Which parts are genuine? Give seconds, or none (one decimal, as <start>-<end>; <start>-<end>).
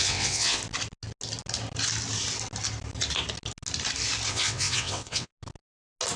0.6-4.3; 5.3-6.2